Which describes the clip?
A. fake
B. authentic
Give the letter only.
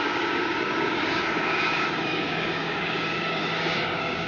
A